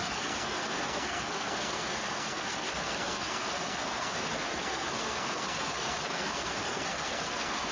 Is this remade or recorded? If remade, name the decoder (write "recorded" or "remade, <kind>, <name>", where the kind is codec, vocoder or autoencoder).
remade, codec, SNAC